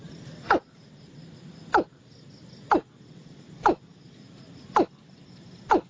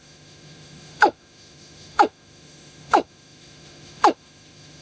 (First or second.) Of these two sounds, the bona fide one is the first